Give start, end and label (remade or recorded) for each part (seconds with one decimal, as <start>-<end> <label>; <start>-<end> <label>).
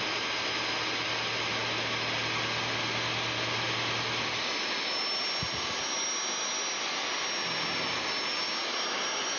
0.0-9.4 recorded